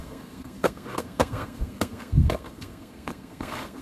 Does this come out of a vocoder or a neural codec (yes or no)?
yes